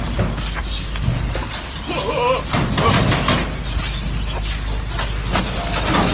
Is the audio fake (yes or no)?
no